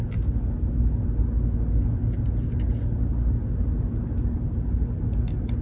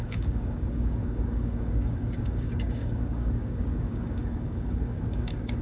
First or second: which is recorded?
first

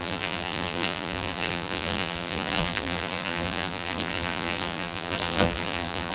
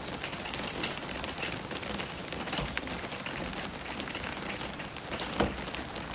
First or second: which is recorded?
second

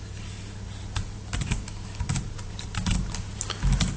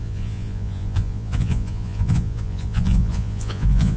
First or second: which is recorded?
first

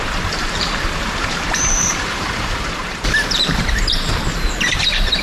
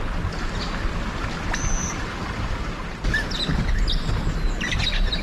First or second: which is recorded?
second